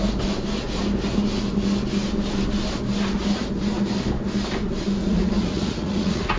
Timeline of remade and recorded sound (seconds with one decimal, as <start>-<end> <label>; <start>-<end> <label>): 0.0-5.0 recorded; 5.0-6.4 remade

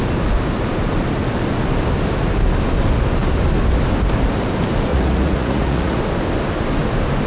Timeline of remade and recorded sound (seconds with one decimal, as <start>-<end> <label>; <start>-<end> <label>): 0.0-4.9 recorded; 4.9-6.0 remade; 6.0-7.3 recorded